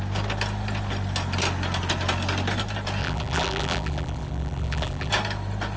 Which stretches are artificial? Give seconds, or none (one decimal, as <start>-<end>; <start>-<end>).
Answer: 3.0-5.1